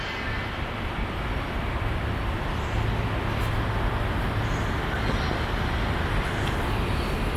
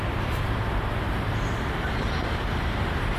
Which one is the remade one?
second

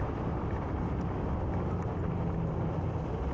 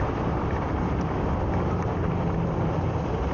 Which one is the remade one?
second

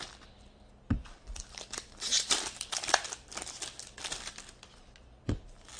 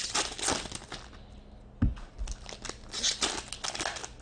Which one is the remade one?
first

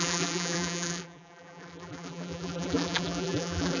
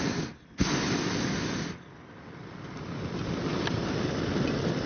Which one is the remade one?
first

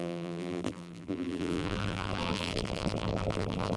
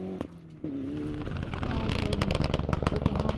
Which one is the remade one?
first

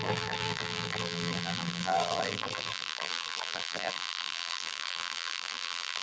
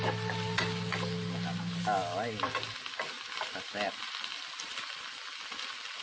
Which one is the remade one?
first